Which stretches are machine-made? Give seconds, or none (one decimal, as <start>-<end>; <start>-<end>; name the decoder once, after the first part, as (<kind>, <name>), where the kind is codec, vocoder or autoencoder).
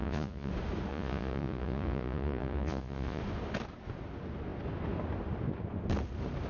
0.0-0.5 (vocoder, Vocos); 0.9-3.2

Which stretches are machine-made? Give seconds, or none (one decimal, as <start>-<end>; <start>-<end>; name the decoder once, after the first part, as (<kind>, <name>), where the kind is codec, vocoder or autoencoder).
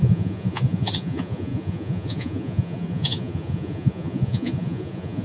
0.0-5.2 (vocoder, Vocos)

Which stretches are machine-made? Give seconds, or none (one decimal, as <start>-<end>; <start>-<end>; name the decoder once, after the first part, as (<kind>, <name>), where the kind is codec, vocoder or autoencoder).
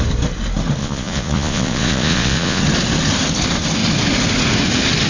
0.8-2.6 (vocoder, Vocos)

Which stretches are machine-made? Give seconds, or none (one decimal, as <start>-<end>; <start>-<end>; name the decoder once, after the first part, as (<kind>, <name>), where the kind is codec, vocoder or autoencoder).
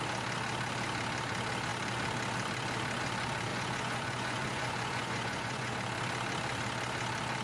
3.5-5.7 (vocoder, Vocos)